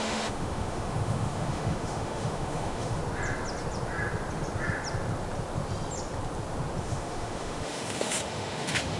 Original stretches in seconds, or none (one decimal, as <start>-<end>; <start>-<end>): 3.0-6.8